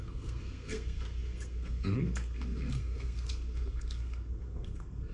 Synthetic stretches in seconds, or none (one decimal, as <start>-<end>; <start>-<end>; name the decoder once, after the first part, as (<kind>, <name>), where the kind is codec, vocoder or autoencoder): 0.0-5.1 (codec, SNAC)